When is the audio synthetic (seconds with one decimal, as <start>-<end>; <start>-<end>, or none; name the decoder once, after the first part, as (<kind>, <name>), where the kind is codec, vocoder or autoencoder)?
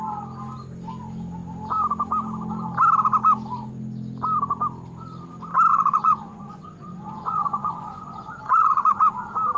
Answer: 5.7-9.1 (vocoder, Vocos)